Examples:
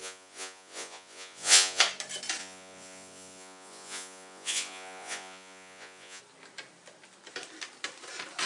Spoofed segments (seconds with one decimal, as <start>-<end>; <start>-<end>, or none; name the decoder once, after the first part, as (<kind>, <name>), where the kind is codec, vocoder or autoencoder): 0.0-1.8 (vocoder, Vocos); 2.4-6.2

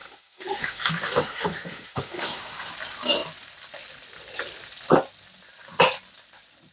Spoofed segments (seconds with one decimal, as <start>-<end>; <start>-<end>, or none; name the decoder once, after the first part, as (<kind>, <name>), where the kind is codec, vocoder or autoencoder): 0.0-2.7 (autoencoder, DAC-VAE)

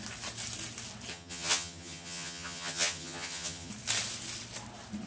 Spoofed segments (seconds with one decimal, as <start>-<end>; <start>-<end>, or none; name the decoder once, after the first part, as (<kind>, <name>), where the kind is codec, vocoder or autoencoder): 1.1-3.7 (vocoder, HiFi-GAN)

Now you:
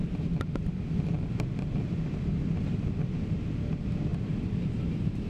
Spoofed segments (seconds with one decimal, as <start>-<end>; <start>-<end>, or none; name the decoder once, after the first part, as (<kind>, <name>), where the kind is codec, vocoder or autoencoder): 4.1-5.3 (vocoder, BigVGAN v2)